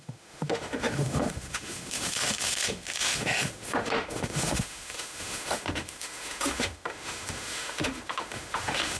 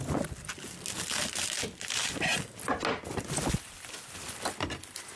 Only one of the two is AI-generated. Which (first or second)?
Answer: first